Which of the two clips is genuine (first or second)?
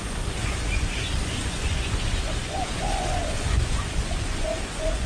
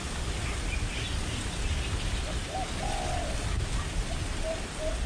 second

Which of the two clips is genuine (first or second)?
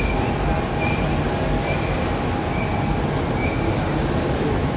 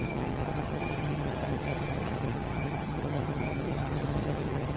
first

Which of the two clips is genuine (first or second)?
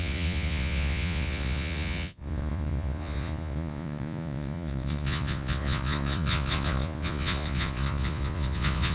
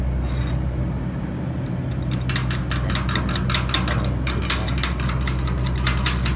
second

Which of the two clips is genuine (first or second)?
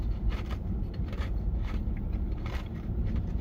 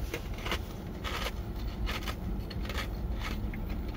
second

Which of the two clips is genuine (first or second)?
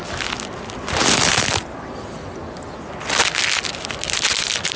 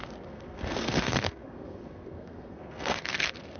first